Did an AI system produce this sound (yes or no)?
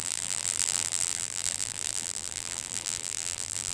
yes